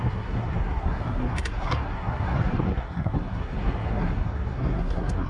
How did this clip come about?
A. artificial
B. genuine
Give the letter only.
A